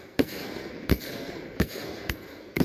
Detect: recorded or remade remade